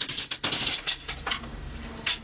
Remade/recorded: recorded